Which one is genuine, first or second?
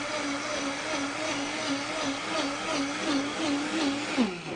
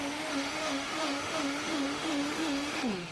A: first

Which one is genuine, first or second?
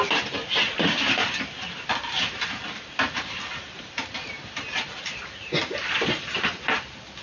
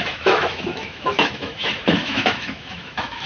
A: first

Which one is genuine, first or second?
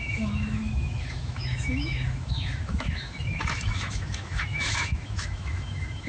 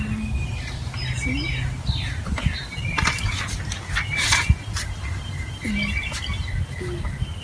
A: second